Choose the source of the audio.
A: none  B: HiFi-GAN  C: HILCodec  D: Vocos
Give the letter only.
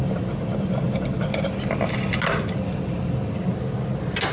A